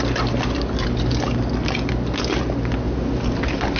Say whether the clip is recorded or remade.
recorded